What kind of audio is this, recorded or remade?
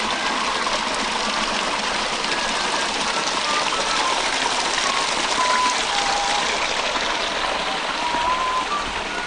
recorded